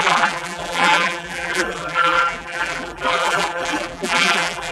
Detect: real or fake fake